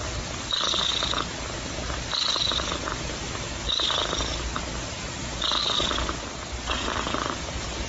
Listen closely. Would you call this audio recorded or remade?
recorded